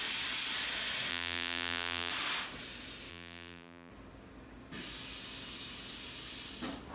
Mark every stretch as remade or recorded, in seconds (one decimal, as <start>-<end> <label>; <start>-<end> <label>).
0.0-1.1 recorded; 1.1-2.1 remade; 2.1-3.1 recorded; 3.1-3.9 remade; 3.9-6.9 recorded